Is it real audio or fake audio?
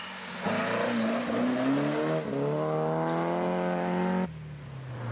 real